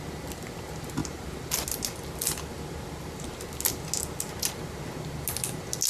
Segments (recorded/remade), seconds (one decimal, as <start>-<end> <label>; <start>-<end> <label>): 0.0-5.9 recorded